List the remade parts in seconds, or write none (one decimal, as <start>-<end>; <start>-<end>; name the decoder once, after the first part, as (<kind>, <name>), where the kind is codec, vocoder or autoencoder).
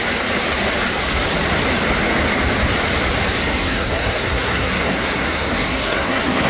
3.4-6.5 (codec, SNAC)